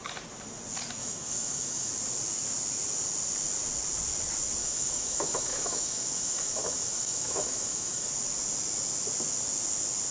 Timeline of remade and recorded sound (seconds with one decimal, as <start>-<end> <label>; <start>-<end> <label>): 0.0-1.0 recorded; 1.0-1.9 remade; 1.9-4.6 recorded; 4.6-8.1 remade; 8.1-10.1 recorded